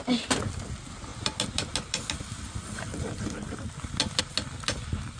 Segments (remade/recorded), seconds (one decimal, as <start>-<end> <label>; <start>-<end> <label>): 0.0-5.2 recorded